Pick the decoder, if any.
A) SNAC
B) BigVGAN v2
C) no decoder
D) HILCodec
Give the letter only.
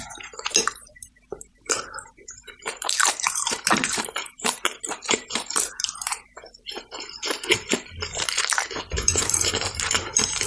B